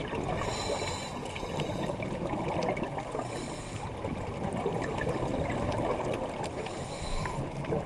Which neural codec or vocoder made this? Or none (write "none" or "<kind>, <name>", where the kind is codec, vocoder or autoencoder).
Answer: none